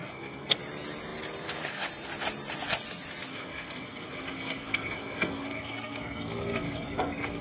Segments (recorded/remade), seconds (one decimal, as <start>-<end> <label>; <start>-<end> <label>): 0.0-0.6 remade; 0.6-3.3 recorded; 3.3-7.4 remade